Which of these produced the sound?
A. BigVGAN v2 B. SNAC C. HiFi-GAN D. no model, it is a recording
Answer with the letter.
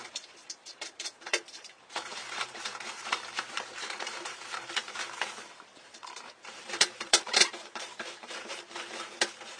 A